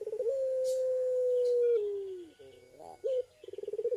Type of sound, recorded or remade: recorded